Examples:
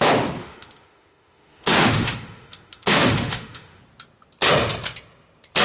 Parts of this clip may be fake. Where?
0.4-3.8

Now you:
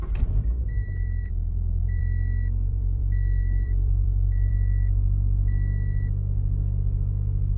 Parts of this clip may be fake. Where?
0.6-2.0; 2.7-4.5